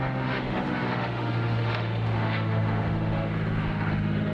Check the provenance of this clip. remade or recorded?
remade